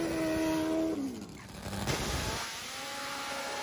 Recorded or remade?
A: recorded